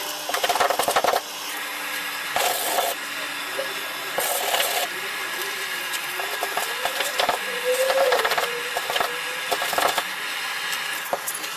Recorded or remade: recorded